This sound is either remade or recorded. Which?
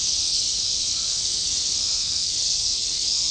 remade